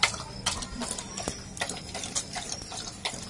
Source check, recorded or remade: recorded